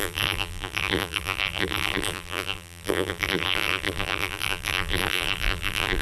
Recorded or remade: remade